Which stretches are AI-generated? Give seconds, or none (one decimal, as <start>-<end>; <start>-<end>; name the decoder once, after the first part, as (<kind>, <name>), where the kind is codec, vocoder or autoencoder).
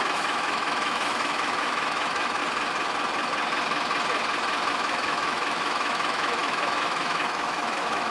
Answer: 0.0-2.4 (autoencoder, DAC-VAE); 4.7-8.1